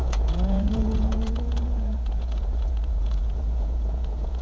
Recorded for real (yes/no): no